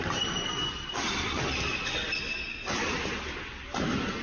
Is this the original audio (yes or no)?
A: yes